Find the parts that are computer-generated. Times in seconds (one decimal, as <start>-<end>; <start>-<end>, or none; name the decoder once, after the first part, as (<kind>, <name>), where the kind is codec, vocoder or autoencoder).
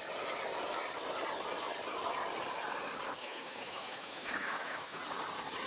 3.2-5.0 (autoencoder, DAC-VAE)